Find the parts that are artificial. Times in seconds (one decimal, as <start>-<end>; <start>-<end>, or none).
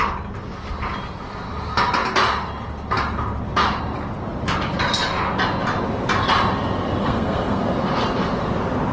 7.0-7.6